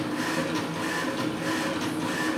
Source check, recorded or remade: recorded